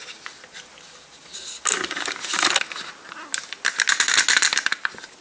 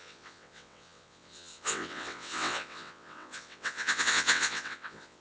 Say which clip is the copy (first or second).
second